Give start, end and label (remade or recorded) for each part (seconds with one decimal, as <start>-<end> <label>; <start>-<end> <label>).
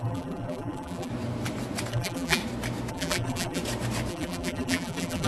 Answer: 0.0-1.1 remade; 1.1-1.9 recorded; 1.9-2.4 remade; 2.4-2.9 recorded; 2.9-3.6 remade; 3.6-4.1 recorded; 4.1-5.3 remade